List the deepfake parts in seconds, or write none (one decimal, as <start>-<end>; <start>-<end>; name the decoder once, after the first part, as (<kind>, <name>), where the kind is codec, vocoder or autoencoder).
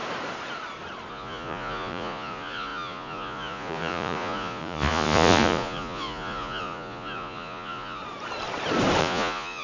1.1-8.0 (vocoder, Vocos); 9.0-9.6